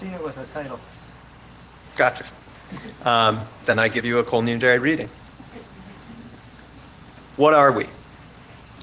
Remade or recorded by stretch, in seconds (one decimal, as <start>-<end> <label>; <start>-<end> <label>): 0.0-3.4 recorded; 3.4-4.0 remade; 4.0-8.8 recorded